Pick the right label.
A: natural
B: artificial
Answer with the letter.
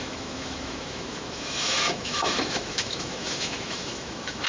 B